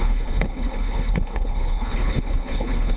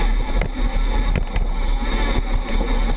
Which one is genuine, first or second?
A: second